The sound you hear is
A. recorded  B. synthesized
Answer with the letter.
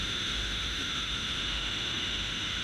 B